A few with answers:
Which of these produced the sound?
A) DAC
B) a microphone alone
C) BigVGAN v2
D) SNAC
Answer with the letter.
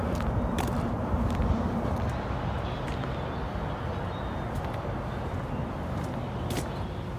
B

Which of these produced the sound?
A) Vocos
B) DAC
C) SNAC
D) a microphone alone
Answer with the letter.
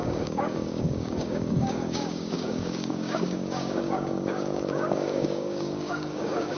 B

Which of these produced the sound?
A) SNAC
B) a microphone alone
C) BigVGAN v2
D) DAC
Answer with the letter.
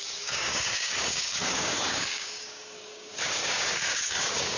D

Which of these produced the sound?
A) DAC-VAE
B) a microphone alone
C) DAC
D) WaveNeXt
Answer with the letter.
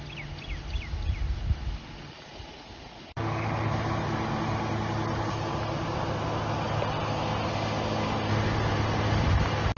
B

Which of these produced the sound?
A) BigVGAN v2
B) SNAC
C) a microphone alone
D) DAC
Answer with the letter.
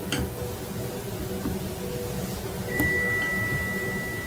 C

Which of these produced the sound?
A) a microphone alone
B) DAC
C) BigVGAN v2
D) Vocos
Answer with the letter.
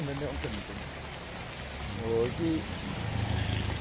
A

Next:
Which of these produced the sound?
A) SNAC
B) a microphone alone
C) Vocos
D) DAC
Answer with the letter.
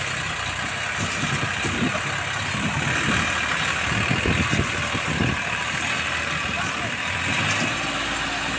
B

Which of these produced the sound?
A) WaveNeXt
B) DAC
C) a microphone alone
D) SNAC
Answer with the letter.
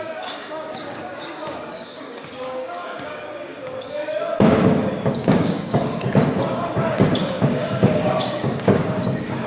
B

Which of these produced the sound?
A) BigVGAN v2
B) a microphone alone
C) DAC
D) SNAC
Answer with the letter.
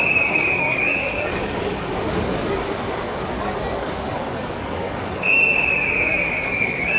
C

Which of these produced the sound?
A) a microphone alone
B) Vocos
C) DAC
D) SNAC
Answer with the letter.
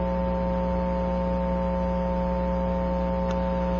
A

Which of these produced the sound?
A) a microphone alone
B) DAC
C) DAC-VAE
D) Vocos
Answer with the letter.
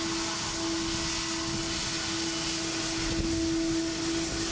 A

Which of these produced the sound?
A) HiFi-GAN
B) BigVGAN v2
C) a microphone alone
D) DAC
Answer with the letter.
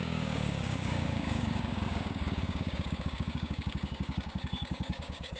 D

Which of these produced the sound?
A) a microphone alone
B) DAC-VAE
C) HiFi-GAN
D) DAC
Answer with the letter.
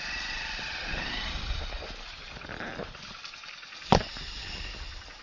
A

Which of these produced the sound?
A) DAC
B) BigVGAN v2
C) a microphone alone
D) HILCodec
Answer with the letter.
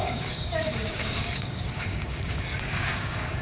A